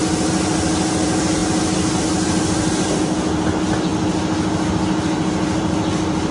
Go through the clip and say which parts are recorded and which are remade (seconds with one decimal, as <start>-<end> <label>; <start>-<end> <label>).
0.0-6.3 recorded